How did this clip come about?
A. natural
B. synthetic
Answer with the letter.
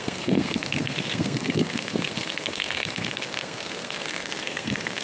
B